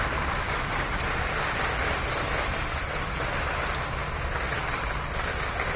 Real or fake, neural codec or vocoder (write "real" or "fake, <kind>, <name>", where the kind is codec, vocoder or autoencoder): real